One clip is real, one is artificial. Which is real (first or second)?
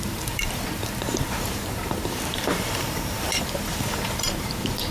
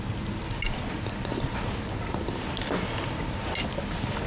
second